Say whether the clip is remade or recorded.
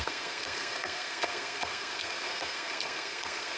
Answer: remade